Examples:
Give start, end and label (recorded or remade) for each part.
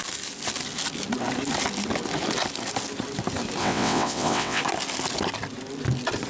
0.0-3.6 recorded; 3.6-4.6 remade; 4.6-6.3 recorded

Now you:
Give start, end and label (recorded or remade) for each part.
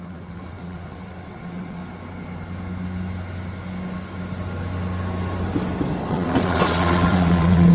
0.0-1.8 remade; 1.8-6.1 recorded; 6.1-7.7 remade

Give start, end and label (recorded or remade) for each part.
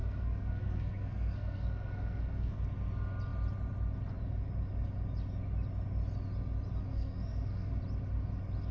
0.0-2.6 remade; 2.6-6.9 recorded; 6.9-7.8 remade; 7.8-8.7 recorded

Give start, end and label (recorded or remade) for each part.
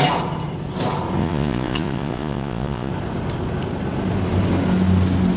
0.0-1.2 recorded; 1.2-2.9 remade; 2.9-5.4 recorded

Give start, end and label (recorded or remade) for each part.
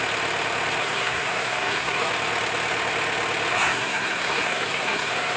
0.0-0.8 recorded; 0.8-2.1 remade; 2.1-3.5 recorded; 3.5-5.4 remade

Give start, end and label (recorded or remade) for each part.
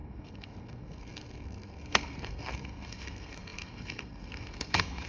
0.0-5.1 remade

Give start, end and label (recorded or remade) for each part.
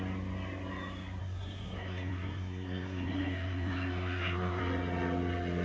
0.0-1.2 recorded; 1.2-4.6 remade; 4.6-5.6 recorded